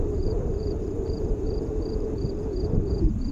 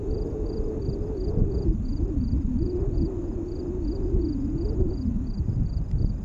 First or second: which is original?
second